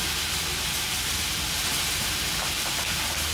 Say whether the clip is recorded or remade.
recorded